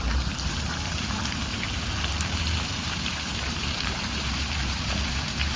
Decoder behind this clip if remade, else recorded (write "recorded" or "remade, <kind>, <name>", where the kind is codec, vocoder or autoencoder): remade, vocoder, BigVGAN v2